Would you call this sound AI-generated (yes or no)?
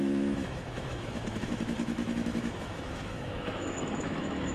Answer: yes